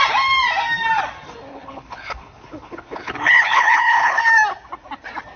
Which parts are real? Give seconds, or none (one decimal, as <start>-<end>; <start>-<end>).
0.0-1.5; 4.2-5.4